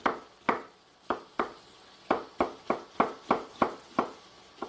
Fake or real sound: real